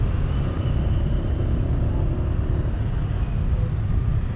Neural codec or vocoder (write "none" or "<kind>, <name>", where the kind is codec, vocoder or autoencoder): none